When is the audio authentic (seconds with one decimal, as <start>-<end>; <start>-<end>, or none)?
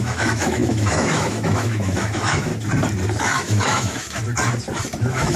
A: 2.5-3.2; 4.2-5.0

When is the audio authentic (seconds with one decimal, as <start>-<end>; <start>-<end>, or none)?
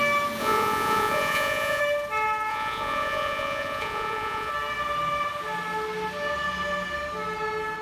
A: 0.0-0.4; 1.8-2.5; 4.5-7.8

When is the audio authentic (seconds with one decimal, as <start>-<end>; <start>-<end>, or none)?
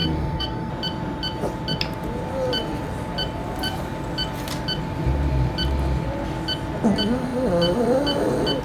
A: 0.7-8.6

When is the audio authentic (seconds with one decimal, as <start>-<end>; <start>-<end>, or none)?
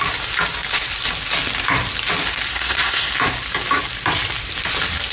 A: 0.0-2.5; 3.1-5.1